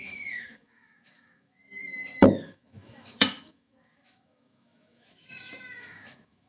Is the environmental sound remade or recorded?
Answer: remade